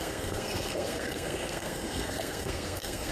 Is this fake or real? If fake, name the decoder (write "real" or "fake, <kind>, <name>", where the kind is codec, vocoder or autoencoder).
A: fake, codec, SNAC